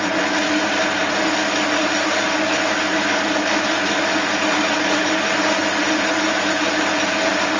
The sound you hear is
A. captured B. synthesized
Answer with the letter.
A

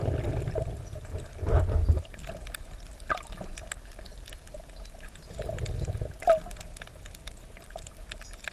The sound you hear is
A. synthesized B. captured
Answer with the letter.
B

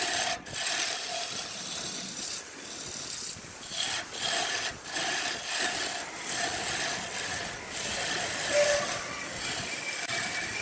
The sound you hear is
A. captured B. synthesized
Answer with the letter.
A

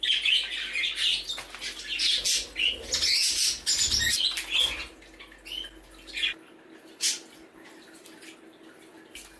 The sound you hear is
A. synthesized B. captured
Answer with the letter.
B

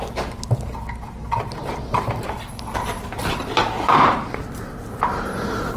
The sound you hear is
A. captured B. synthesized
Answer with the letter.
A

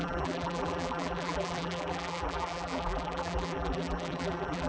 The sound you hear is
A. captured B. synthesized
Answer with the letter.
B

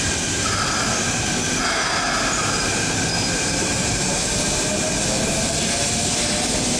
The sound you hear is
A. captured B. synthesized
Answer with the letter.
A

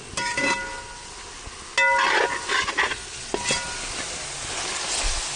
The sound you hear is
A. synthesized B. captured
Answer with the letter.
B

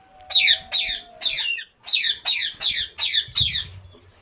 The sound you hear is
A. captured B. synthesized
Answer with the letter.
A